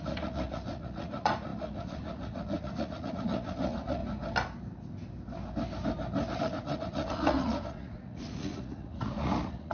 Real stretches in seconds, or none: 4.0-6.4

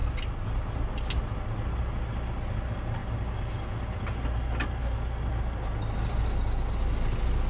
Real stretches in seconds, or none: 0.0-7.5